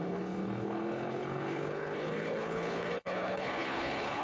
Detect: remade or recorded remade